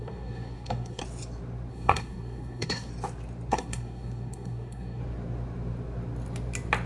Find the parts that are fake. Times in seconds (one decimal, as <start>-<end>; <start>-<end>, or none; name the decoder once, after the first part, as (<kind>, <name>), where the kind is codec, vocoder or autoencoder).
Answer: 0.0-1.0 (codec, SNAC); 1.7-2.9; 3.5-5.0